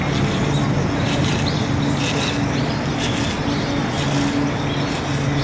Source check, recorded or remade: recorded